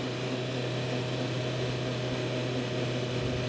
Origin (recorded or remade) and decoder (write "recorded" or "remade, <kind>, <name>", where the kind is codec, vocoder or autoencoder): recorded